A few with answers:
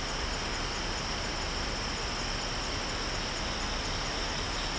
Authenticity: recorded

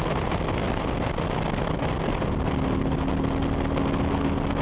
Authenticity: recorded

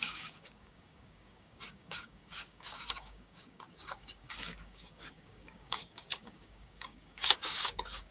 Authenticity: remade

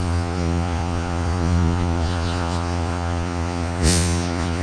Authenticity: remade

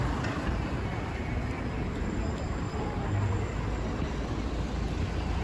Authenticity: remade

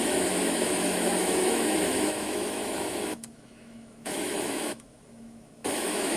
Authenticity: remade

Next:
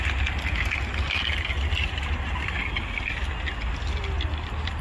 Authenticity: recorded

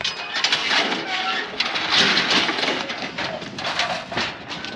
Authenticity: recorded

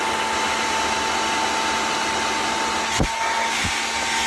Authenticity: recorded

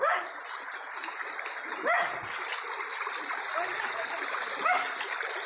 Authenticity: recorded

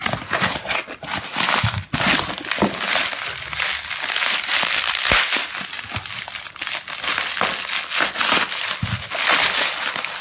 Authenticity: recorded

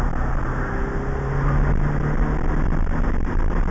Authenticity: recorded